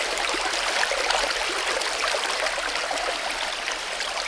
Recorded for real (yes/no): no